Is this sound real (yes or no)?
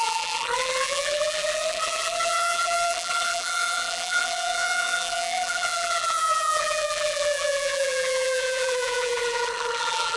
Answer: no